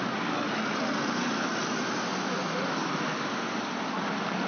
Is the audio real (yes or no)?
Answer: yes